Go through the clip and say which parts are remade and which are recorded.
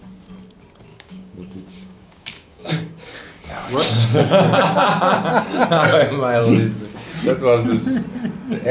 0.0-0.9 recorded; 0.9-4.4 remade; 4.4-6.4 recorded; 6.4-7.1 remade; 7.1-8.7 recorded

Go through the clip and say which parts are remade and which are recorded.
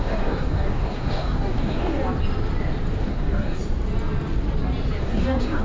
0.0-2.0 remade; 2.0-3.0 recorded; 3.0-3.6 remade; 3.6-5.0 recorded; 5.0-5.6 remade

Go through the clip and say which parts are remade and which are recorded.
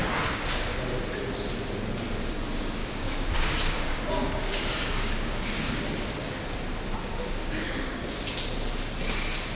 0.0-0.8 remade; 0.8-2.8 recorded; 2.8-5.8 remade; 5.8-7.0 recorded; 7.0-8.3 remade; 8.3-9.5 recorded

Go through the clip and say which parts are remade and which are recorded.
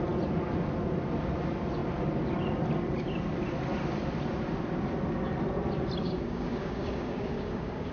0.0-6.0 recorded; 6.0-7.9 remade